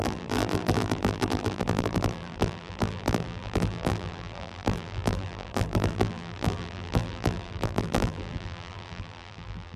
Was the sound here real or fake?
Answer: fake